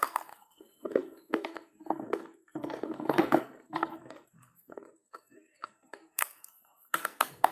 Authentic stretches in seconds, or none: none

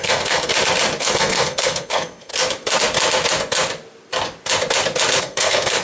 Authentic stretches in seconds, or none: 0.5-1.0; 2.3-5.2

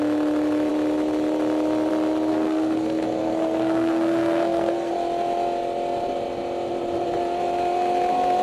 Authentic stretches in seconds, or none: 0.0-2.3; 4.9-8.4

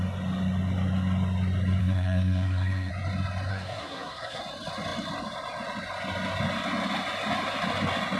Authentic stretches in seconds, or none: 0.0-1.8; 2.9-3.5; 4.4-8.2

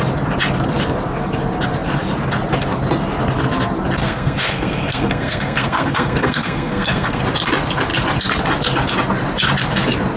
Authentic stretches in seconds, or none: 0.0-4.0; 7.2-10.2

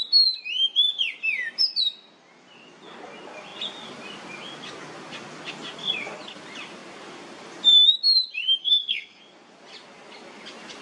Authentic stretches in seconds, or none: 0.0-8.6; 9.2-10.8